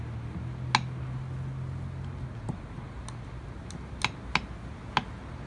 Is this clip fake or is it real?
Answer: real